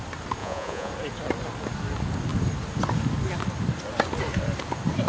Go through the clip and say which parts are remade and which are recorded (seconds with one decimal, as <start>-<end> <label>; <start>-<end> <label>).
0.0-0.4 recorded; 0.4-0.9 remade; 0.9-5.1 recorded